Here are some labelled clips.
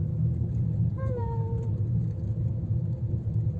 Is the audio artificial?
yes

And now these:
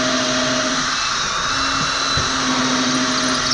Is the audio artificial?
no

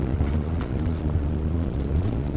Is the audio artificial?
yes